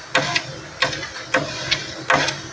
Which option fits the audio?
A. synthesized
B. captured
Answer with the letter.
B